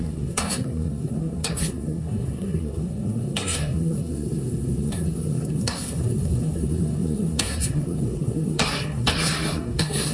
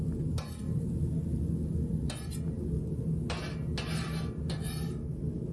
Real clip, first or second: second